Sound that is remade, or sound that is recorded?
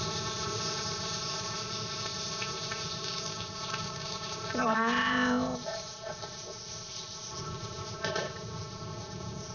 remade